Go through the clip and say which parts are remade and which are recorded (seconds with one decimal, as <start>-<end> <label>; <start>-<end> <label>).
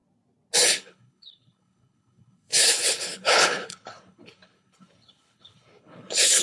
0.0-0.6 recorded; 0.6-6.4 remade